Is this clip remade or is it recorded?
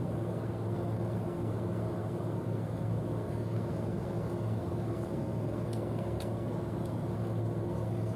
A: remade